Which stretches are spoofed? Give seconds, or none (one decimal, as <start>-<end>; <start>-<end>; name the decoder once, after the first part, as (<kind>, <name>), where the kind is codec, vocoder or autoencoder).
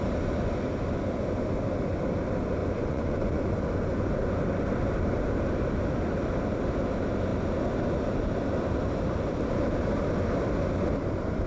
2.6-3.5 (vocoder, Vocos)